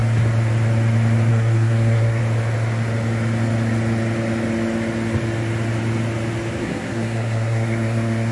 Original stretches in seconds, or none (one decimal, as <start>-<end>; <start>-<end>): 0.0-1.3; 2.2-6.6